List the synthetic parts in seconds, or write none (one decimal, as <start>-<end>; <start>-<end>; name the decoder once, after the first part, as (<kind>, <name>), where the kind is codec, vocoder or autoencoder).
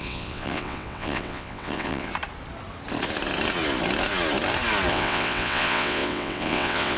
0.0-2.1 (vocoder, WaveNeXt); 4.9-7.0